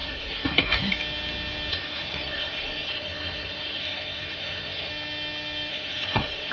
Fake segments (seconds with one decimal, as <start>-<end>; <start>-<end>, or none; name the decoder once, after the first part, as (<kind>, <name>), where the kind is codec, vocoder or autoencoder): 0.0-0.9 (codec, SNAC); 1.7-4.9; 5.7-6.5